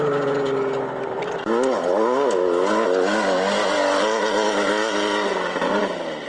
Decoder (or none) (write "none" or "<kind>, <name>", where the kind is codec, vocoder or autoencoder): none